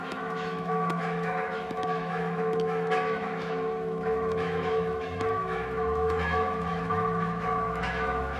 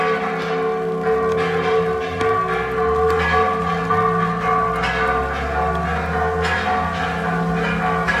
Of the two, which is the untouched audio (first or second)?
second